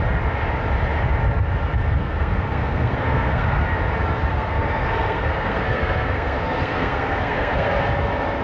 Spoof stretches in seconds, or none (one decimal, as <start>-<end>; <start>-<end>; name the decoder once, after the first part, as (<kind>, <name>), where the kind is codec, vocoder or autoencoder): 2.0-3.6 (codec, SNAC); 4.3-7.8